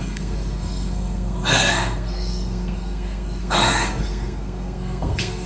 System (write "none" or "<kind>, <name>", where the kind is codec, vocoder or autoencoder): codec, SNAC